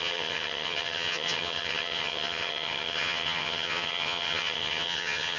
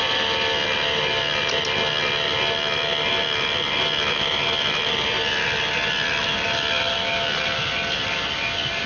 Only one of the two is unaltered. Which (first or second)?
second